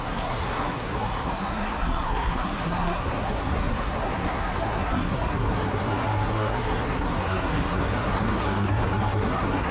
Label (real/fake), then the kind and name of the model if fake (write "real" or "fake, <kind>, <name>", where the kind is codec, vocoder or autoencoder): fake, codec, SNAC